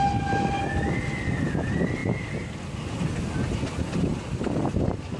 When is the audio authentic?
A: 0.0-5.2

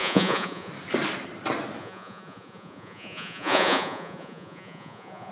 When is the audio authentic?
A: 0.7-1.8

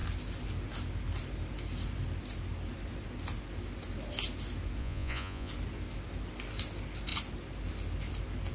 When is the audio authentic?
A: 0.0-4.8; 5.5-8.5

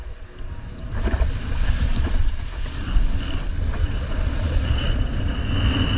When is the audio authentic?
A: 0.0-1.6; 2.2-3.7; 5.1-6.0

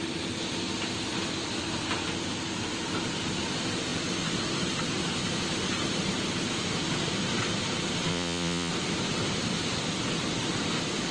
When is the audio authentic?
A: 0.0-8.1; 8.7-11.1

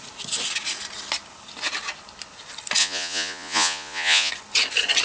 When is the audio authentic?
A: 0.0-2.8; 4.3-5.0